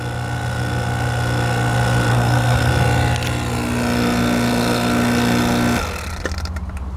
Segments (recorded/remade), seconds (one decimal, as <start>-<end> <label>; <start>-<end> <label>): 0.0-2.1 recorded; 2.1-2.7 remade; 2.7-7.0 recorded